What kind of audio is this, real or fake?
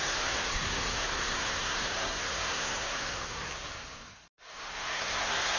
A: fake